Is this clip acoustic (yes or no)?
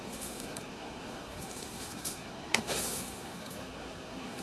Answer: no